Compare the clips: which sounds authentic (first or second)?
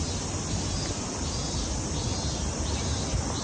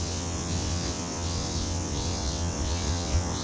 first